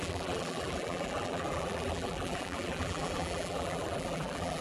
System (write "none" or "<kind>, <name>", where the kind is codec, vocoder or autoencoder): vocoder, BigVGAN v2